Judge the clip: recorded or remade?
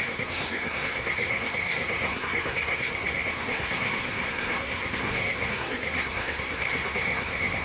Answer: remade